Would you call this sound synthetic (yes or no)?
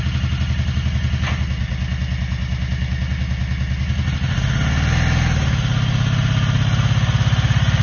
no